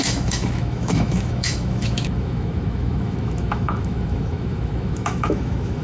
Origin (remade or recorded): remade